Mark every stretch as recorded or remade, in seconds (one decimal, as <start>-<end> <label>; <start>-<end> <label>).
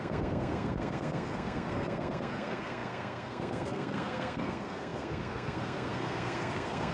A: 0.0-6.9 remade